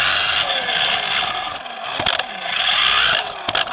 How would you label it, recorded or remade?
recorded